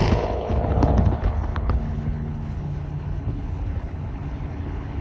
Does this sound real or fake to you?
fake